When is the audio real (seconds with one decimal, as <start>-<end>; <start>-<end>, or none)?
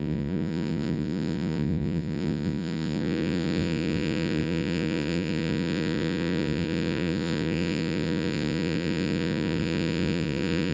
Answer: none